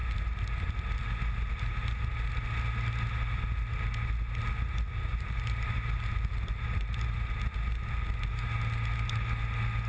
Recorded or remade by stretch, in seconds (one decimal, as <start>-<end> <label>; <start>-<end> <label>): 0.0-5.1 recorded; 5.1-6.3 remade; 6.3-9.9 recorded